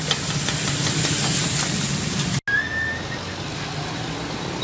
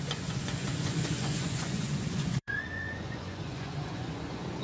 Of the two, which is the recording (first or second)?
first